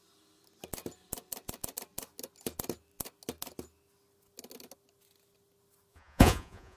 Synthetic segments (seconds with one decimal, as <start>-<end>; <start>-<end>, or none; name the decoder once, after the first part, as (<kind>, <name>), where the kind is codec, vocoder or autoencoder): 5.9-6.8 (vocoder, Vocos)

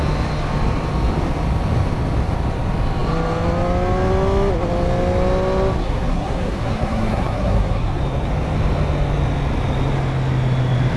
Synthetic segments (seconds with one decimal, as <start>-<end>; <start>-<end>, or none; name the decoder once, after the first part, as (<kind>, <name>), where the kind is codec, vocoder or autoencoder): 5.8-8.0 (codec, SNAC)

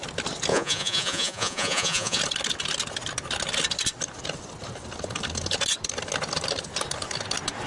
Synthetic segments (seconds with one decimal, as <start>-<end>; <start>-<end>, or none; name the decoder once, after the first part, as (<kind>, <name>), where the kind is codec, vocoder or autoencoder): 0.5-2.2 (vocoder, Vocos)

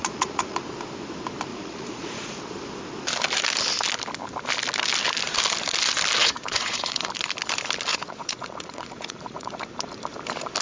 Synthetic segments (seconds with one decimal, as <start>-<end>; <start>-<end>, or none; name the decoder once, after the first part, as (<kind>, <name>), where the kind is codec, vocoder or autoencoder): 0.0-0.6 (vocoder, Vocos); 1.5-2.4; 6.2-7.1; 7.9-9.6

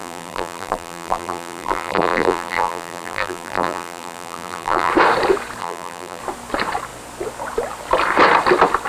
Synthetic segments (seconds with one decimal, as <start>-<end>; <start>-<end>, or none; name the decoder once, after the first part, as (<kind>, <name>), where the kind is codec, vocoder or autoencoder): 0.0-4.9 (vocoder, BigVGAN v2); 5.6-6.2